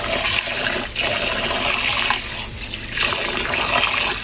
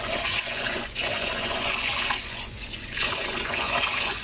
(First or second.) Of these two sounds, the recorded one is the first